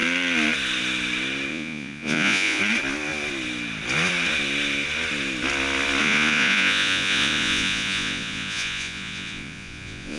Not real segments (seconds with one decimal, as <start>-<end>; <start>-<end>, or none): 1.5-2.6; 6.0-10.2